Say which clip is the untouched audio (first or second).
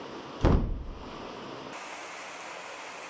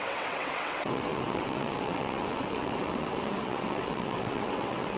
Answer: first